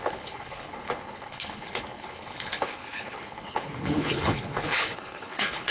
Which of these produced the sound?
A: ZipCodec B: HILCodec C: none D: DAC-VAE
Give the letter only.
B